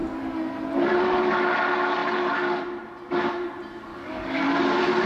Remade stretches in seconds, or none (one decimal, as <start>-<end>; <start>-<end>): 3.9-4.5